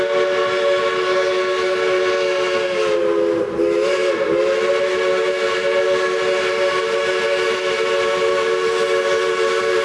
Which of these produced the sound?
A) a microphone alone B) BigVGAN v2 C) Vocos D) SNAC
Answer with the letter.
A